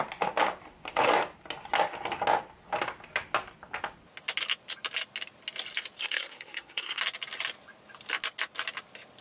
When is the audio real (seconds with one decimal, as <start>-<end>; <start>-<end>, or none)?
0.0-6.0; 7.0-9.2